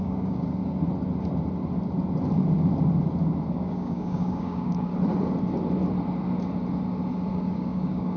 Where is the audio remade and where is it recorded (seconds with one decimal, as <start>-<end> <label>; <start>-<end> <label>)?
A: 0.0-0.6 remade; 0.6-3.5 recorded; 3.5-4.9 remade; 4.9-7.3 recorded; 7.3-8.2 remade